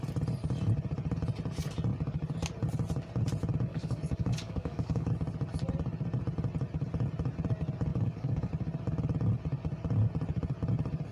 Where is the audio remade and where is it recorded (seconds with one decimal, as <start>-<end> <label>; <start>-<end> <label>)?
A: 0.0-3.7 recorded; 3.7-5.1 remade; 5.1-7.9 recorded; 7.9-8.5 remade; 8.5-11.1 recorded